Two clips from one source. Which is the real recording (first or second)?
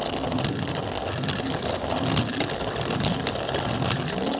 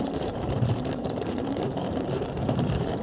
first